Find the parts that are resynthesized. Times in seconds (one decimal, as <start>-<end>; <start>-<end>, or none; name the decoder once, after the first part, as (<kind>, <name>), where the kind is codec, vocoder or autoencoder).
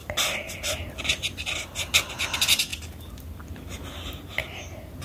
0.5-2.7 (vocoder, BigVGAN v2); 3.9-5.0